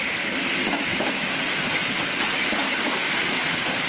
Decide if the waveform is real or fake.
real